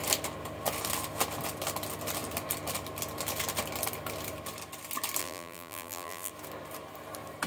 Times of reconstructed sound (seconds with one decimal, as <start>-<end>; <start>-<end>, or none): 5.2-6.3